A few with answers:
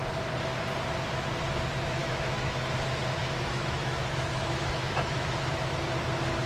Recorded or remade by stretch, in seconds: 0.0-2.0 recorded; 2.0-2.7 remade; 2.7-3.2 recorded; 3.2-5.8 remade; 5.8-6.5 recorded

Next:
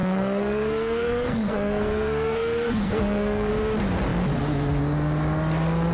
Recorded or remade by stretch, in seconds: 0.0-3.5 remade; 3.5-5.9 recorded